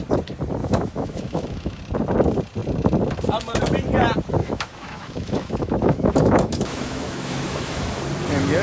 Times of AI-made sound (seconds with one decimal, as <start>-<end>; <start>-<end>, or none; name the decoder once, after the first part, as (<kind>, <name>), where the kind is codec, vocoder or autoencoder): 0.6-1.8 (autoencoder, DAC-VAE); 4.4-8.0